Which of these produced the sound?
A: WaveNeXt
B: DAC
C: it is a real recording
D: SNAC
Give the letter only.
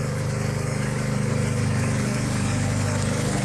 B